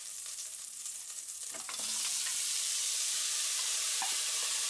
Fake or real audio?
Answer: fake